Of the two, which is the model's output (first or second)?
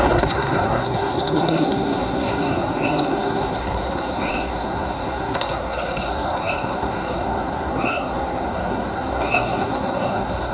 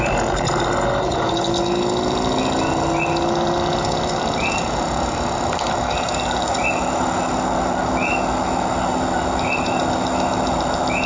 first